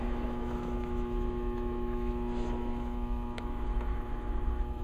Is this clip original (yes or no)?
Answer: no